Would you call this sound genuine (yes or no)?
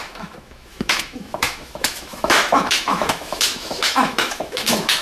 no